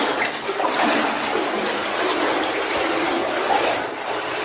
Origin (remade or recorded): recorded